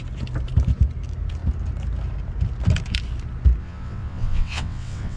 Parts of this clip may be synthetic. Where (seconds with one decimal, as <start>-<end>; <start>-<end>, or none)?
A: 3.6-5.2